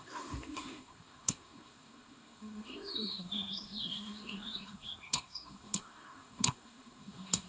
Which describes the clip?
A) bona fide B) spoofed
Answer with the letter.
B